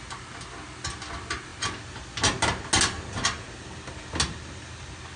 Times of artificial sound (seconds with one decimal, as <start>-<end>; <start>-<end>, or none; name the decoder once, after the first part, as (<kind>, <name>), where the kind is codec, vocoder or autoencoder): none